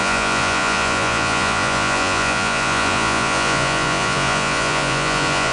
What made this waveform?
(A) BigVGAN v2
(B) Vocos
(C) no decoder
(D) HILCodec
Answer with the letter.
B